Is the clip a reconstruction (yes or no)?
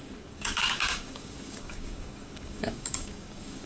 yes